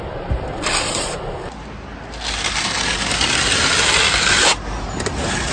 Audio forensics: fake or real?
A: real